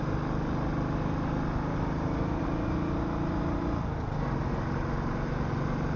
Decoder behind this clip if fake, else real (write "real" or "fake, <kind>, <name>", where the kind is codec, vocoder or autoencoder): real